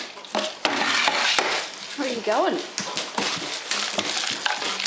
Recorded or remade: recorded